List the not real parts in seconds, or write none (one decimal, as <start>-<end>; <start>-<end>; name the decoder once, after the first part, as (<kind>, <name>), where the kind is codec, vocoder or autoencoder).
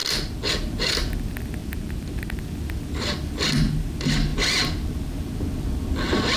1.6-2.4 (vocoder, BigVGAN v2)